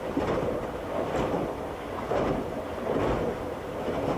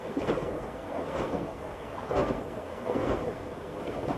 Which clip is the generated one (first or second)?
second